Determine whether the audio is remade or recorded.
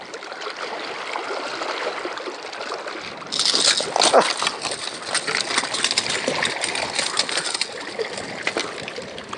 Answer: recorded